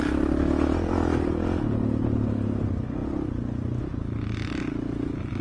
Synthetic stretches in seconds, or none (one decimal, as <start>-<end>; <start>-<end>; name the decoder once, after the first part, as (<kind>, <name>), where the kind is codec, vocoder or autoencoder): none